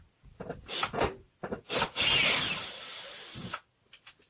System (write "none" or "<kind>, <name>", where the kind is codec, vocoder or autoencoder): none